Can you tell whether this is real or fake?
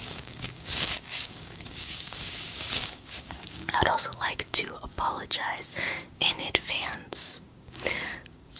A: fake